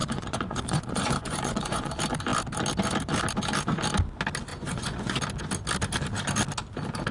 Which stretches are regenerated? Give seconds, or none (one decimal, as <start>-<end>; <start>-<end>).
0.0-1.9; 4.5-5.2